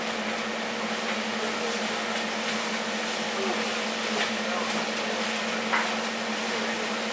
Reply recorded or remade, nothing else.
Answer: recorded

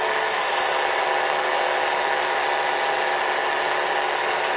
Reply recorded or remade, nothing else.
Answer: recorded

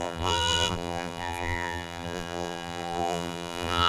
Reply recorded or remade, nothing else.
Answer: remade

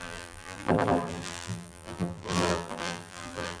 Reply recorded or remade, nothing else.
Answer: remade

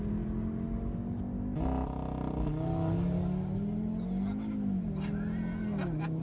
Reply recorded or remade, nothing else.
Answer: recorded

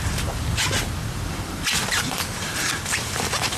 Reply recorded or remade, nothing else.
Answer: remade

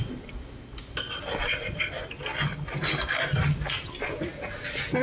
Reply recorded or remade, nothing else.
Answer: recorded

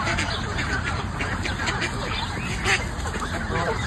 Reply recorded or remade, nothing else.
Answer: recorded